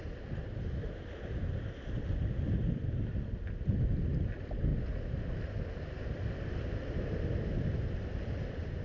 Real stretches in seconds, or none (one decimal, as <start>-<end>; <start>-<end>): 0.0-8.8